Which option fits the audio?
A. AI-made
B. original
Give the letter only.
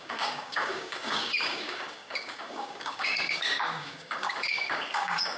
A